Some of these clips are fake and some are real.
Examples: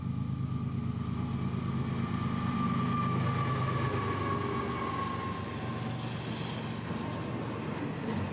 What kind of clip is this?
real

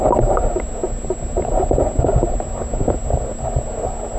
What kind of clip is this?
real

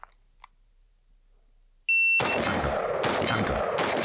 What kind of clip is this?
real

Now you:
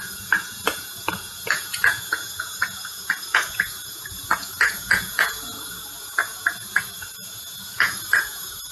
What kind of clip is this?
fake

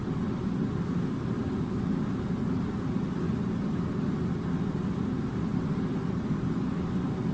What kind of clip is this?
real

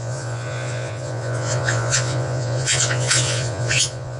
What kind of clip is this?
fake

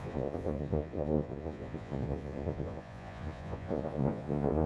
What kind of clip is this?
fake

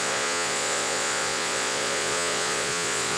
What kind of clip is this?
fake